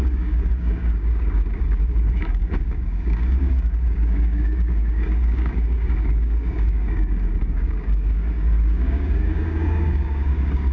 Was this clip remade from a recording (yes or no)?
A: yes